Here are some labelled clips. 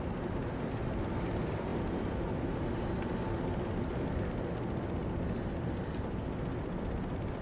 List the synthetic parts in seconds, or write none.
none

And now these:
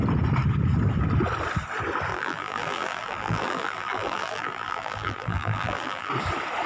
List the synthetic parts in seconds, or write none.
2.1-6.1